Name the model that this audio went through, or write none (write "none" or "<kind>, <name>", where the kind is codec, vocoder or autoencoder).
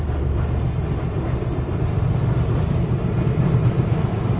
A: vocoder, BigVGAN v2